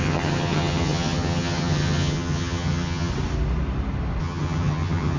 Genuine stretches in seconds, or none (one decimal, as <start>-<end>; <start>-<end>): 3.1-4.2

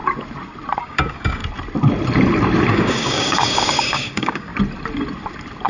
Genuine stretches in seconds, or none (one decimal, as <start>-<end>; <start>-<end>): 0.0-0.8; 1.4-2.7; 4.5-5.7

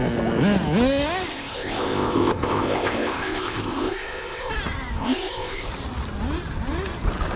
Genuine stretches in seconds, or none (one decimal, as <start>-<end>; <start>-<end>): 0.0-1.3; 4.5-5.0; 5.7-7.4

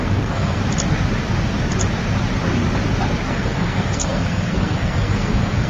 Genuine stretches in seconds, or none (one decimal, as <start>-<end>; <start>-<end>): 0.6-3.3

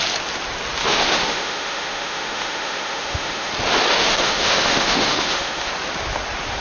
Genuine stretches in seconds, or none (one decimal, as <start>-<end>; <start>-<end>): 0.0-0.8; 3.5-3.9; 5.7-6.6